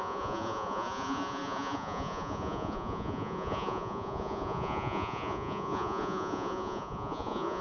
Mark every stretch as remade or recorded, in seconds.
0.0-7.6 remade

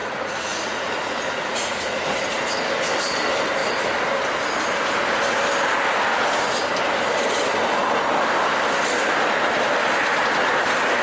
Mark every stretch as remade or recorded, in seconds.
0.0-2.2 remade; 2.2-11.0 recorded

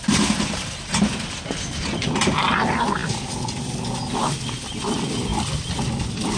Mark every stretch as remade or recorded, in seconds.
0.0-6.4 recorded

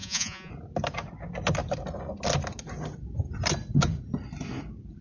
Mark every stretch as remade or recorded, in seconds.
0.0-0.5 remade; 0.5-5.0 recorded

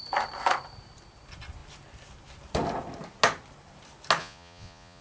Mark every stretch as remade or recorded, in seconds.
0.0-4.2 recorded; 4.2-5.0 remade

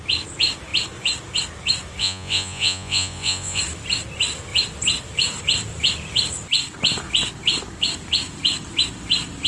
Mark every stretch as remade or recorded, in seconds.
0.0-2.0 recorded; 2.0-3.6 remade; 3.6-9.5 recorded